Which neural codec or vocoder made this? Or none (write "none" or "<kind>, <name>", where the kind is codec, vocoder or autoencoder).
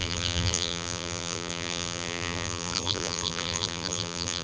vocoder, BigVGAN v2